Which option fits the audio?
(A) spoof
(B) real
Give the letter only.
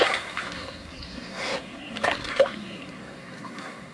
A